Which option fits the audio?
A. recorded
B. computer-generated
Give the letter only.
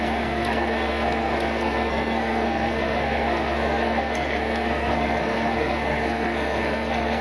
B